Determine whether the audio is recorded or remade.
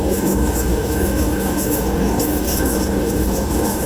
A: remade